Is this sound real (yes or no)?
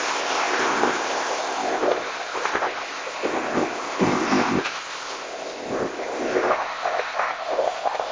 no